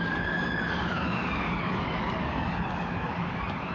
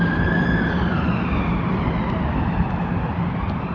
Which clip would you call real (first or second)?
second